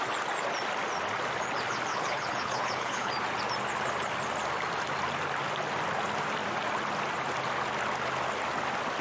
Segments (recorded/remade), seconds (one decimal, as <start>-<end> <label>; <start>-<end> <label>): 0.0-1.9 recorded; 1.9-3.1 remade; 3.1-9.0 recorded